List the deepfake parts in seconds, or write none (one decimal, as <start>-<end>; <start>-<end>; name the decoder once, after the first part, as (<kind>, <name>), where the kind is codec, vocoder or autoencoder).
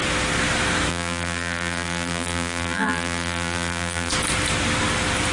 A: 0.9-4.1 (vocoder, BigVGAN v2)